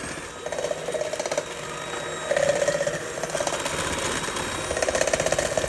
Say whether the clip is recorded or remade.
recorded